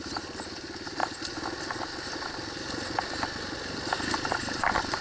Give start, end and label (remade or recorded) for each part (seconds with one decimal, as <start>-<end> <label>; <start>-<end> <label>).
0.0-1.0 remade; 1.0-4.0 recorded; 4.0-5.0 remade